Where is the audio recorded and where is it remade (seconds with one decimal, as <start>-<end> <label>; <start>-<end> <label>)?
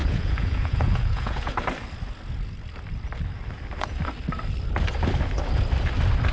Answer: 0.0-1.5 remade; 1.5-6.3 recorded